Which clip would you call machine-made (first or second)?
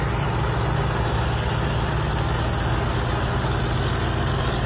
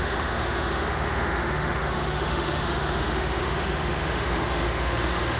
second